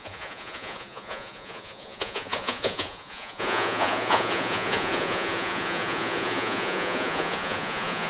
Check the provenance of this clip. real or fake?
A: fake